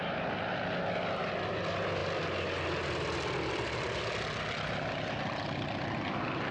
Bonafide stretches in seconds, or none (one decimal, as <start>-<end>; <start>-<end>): 0.0-6.5